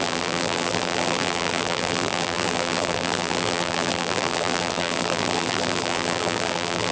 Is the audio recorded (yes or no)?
no